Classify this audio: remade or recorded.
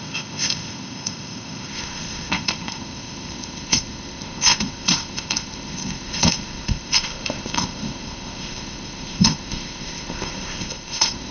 remade